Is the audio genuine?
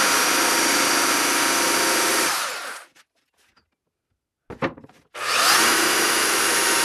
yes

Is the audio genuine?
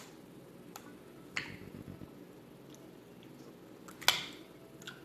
yes